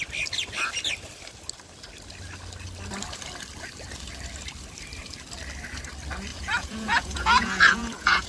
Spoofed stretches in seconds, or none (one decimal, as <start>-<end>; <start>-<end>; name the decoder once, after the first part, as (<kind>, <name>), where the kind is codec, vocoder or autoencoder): 6.3-8.3 (vocoder, Vocos)